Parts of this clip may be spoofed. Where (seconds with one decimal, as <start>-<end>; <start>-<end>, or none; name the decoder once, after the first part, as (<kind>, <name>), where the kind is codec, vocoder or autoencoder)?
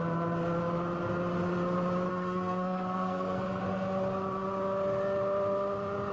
2.1-3.6 (codec, SNAC)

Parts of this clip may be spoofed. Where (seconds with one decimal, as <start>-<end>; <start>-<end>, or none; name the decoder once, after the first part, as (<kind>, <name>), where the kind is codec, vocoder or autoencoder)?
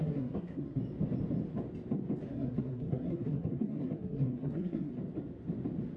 0.0-0.8 (codec, SNAC); 2.3-4.9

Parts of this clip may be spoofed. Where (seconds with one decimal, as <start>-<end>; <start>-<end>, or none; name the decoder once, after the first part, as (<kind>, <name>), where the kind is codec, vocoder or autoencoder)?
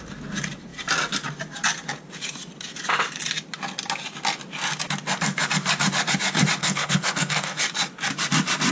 6.6-7.6 (codec, SNAC)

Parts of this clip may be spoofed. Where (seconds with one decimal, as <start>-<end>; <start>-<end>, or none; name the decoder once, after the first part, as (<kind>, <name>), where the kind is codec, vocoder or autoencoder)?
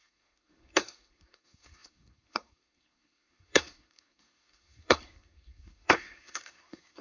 0.0-7.0 (codec, SNAC)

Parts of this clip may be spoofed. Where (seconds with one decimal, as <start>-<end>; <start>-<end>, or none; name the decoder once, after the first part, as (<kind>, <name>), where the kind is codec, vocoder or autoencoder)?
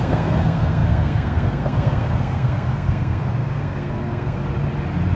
0.0-4.4 (codec, SNAC)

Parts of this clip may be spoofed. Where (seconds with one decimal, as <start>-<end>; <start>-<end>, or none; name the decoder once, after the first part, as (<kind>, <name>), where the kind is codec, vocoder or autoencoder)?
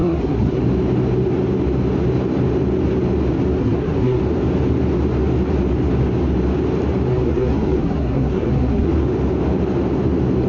0.0-0.6 (codec, SNAC); 3.6-4.2; 7.1-8.9